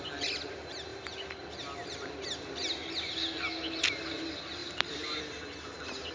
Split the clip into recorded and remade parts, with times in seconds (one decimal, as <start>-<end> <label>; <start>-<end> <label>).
0.0-4.6 recorded; 4.6-5.2 remade; 5.2-6.1 recorded